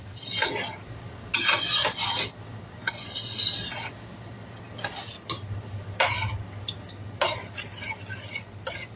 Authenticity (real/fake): real